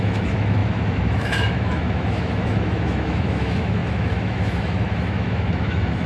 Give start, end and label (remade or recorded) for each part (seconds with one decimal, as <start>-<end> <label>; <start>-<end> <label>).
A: 0.0-6.1 remade